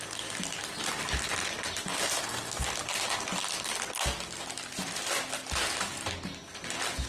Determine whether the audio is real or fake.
real